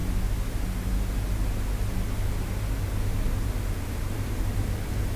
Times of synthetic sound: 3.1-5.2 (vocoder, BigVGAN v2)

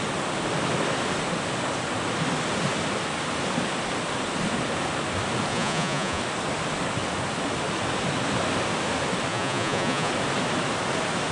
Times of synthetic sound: 5.5-6.2 (vocoder, Vocos); 9.3-10.1